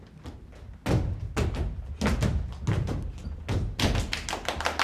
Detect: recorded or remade recorded